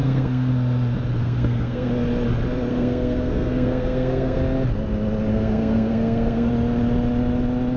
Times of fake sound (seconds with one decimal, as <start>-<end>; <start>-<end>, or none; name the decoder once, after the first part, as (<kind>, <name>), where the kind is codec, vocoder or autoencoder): 0.0-0.5 (codec, SNAC); 1.2-1.9; 2.7-4.4; 5.3-6.5